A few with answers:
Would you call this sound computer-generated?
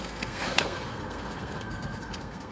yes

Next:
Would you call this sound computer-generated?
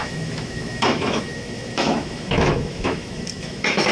yes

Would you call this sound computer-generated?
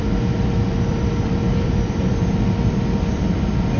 yes